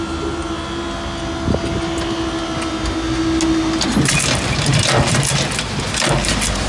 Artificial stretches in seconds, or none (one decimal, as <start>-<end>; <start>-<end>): none